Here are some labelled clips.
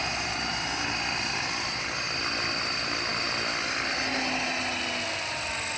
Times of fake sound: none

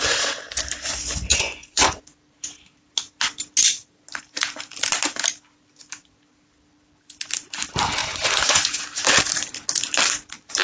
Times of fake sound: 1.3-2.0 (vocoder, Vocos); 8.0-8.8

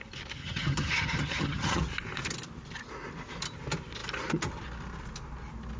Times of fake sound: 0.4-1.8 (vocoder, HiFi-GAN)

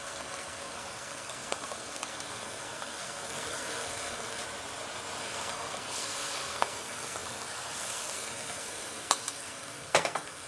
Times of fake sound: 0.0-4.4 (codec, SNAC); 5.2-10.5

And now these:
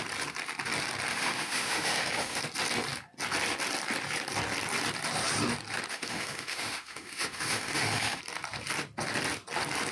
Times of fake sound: 1.1-2.4 (autoencoder, DAC-VAE); 5.9-8.2

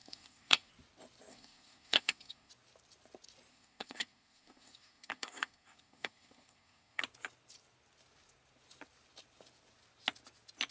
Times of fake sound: 0.0-0.7 (codec, SNAC); 1.3-2.5; 3.5-7.0

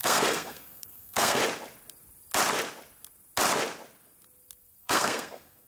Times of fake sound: 0.0-1.4 (codec, SNAC); 4.8-5.7